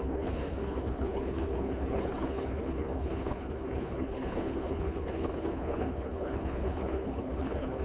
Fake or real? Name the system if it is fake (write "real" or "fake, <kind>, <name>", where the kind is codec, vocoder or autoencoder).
fake, codec, HILCodec